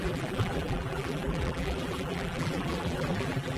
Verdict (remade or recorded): remade